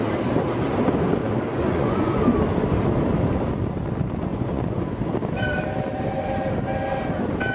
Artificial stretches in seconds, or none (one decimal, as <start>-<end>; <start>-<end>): 1.5-2.2; 4.3-5.0